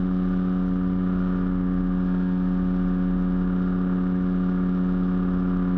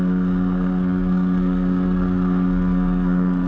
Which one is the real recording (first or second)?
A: first